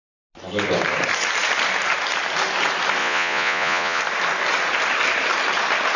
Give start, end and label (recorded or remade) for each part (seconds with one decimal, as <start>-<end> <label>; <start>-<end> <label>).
0.0-3.0 recorded; 3.0-4.0 remade; 4.0-6.0 recorded